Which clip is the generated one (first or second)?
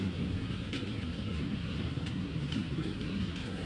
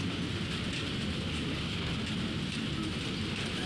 first